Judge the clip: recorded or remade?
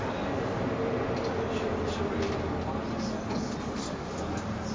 recorded